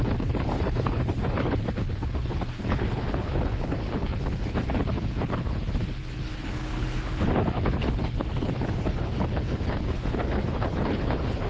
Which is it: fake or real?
fake